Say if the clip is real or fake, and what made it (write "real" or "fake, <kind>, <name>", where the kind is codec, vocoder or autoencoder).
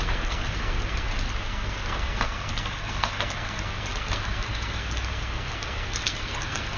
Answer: fake, codec, SNAC